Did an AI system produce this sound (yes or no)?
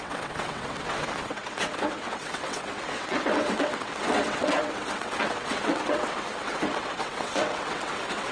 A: yes